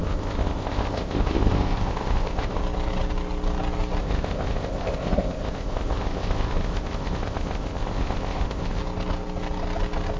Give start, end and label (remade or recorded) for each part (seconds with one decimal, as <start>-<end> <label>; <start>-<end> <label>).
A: 0.0-2.6 remade; 2.6-4.0 recorded; 4.0-8.8 remade; 8.8-10.2 recorded